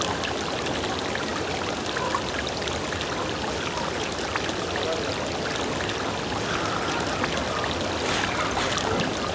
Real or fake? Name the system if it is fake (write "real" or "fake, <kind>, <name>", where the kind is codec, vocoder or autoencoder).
real